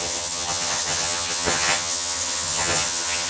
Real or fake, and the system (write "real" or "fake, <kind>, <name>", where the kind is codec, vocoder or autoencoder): fake, vocoder, HiFi-GAN